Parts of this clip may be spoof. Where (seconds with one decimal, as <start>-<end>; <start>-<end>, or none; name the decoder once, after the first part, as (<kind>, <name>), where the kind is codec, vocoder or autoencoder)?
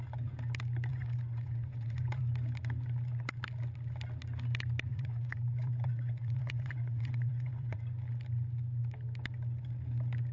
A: 0.9-2.2 (vocoder, Vocos); 4.9-7.8